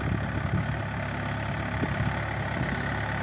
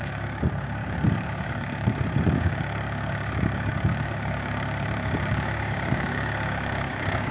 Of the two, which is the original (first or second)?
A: first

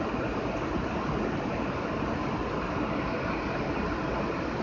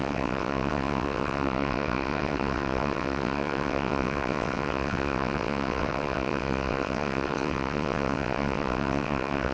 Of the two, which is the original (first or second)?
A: first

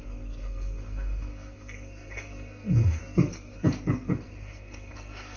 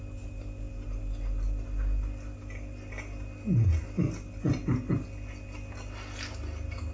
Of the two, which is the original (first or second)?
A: second